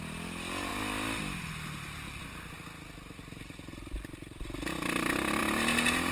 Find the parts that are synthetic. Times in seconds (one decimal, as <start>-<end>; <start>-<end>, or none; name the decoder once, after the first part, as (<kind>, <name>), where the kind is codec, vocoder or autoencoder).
none